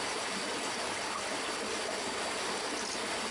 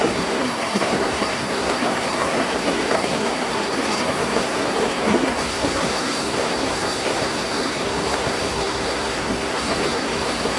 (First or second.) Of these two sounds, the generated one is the second